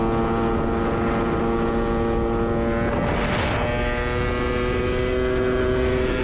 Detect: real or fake real